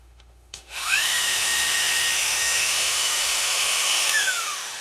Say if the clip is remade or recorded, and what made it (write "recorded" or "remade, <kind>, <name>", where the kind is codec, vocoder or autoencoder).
remade, autoencoder, DAC-VAE